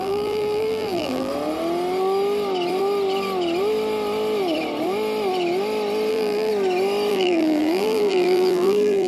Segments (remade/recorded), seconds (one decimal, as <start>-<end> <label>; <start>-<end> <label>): 0.0-1.3 remade; 1.3-6.1 recorded; 6.1-6.5 remade; 6.5-7.1 recorded; 7.1-9.1 remade